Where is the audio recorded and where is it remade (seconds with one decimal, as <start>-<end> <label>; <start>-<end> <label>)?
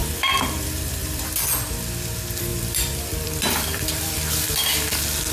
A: 0.0-1.3 remade; 1.3-2.5 recorded; 2.5-4.2 remade; 4.2-5.3 recorded